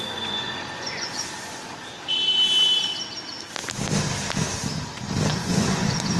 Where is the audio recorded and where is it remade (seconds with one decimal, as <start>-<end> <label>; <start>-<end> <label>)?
0.0-1.7 remade; 1.7-5.3 recorded; 5.3-6.2 remade